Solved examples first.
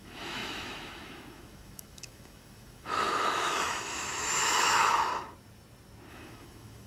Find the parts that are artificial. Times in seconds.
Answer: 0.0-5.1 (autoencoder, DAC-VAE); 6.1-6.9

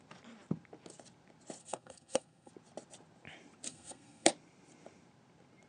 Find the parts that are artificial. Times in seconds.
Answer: 1.6-2.5 (codec, SNAC); 3.7-4.3

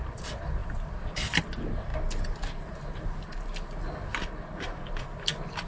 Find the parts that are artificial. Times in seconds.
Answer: 0.6-1.3 (vocoder, BigVGAN v2)

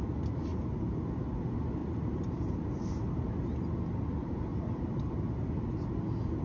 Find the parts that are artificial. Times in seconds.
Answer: 0.5-1.1 (vocoder, BigVGAN v2); 1.8-3.3; 4.5-5.1

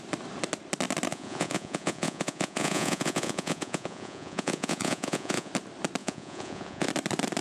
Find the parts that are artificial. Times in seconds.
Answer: 1.1-5.5 (vocoder, Vocos); 6.0-6.9

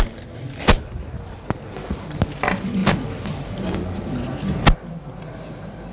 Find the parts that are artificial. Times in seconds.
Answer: none

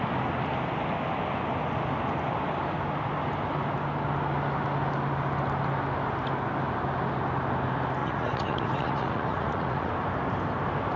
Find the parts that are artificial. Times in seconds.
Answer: 8.0-9.9 (vocoder, Vocos)

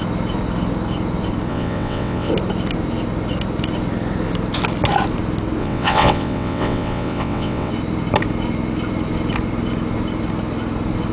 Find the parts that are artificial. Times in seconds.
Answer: 1.5-2.3 (vocoder, WaveNeXt); 5.6-7.7